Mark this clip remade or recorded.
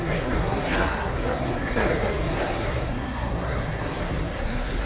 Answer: remade